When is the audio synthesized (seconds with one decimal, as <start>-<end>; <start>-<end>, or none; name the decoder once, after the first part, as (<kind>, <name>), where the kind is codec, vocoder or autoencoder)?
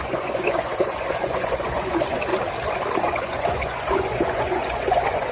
0.0-2.3 (vocoder, Vocos); 3.0-5.3